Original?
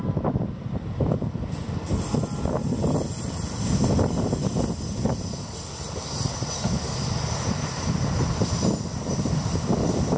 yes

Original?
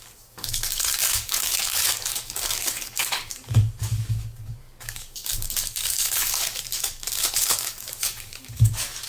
no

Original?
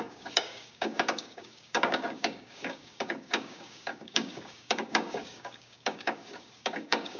no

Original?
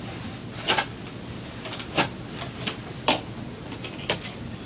yes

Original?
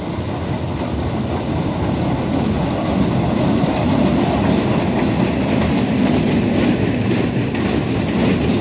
yes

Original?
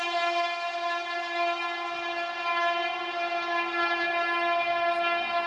yes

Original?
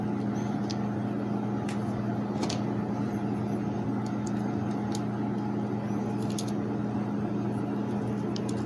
yes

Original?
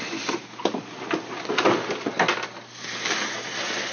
yes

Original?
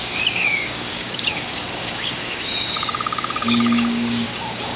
no